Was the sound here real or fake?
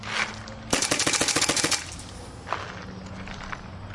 real